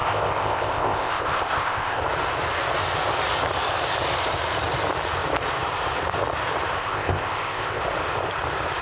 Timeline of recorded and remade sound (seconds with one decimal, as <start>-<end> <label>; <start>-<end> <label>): 0.0-2.0 remade; 2.0-6.8 recorded; 6.8-7.8 remade; 7.8-8.8 recorded